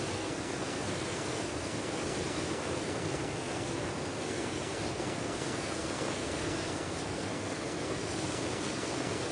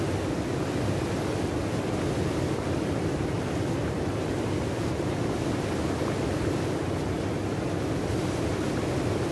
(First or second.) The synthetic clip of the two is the first